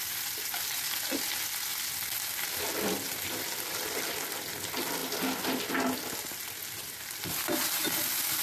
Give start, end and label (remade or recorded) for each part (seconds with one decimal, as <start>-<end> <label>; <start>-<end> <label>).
0.0-8.4 recorded